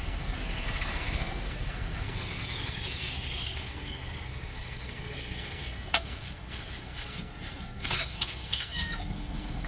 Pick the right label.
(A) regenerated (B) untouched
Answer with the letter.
A